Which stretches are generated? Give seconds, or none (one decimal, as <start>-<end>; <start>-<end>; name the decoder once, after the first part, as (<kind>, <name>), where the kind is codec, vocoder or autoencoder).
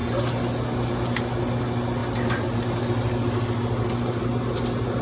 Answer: none